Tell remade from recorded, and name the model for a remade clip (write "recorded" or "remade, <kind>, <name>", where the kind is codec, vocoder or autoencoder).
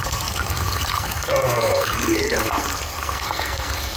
remade, codec, SNAC